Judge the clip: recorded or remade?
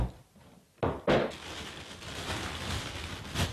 recorded